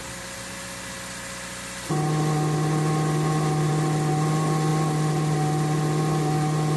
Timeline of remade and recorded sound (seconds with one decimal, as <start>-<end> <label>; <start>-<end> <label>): 0.0-6.8 recorded

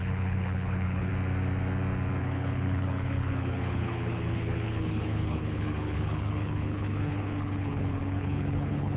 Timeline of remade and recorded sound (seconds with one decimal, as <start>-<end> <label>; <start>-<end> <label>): 0.0-1.1 remade; 1.1-2.2 recorded; 2.2-9.0 remade

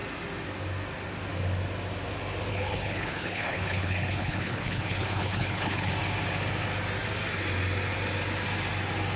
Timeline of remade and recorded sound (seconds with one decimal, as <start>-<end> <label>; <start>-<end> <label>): 0.0-2.5 recorded; 2.5-5.9 remade; 5.9-9.2 recorded

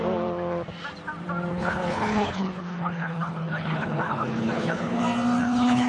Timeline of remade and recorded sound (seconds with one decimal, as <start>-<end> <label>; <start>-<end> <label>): 0.0-1.5 recorded; 1.5-5.0 remade; 5.0-5.4 recorded; 5.4-5.9 remade